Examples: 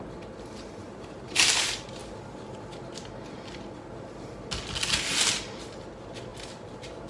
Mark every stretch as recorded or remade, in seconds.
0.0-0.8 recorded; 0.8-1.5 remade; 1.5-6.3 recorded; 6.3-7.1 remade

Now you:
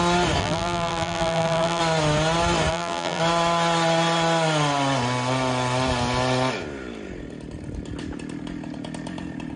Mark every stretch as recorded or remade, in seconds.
0.0-0.4 recorded; 0.4-1.8 remade; 1.8-2.7 recorded; 2.7-3.2 remade; 3.2-9.6 recorded